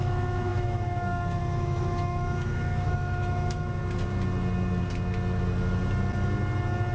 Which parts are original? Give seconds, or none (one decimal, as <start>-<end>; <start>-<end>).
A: 3.8-6.9